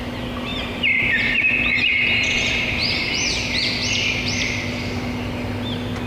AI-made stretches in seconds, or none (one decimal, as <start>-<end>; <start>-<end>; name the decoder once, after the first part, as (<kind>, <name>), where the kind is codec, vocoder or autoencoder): 0.5-1.5 (vocoder, BigVGAN v2); 1.9-3.1